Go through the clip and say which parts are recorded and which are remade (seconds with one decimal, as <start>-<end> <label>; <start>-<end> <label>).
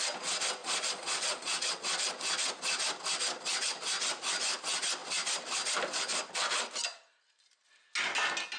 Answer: 0.0-0.6 recorded; 0.6-1.8 remade; 1.8-8.6 recorded